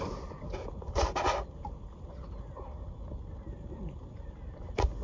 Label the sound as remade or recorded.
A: recorded